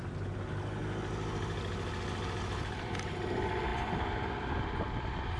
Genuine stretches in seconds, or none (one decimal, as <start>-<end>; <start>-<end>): 0.0-5.4